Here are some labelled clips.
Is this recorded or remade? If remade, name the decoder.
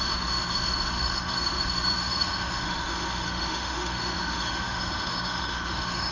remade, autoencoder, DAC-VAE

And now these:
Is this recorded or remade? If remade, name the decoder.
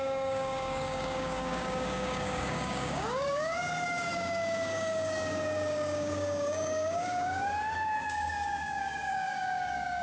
remade, codec, DAC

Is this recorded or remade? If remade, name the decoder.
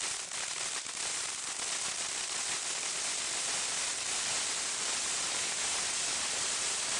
recorded